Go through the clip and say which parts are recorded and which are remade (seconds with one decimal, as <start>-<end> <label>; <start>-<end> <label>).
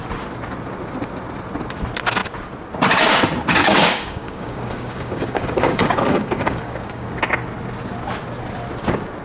0.0-3.6 recorded; 3.6-7.2 remade; 7.2-9.2 recorded